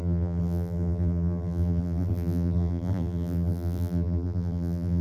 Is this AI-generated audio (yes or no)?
yes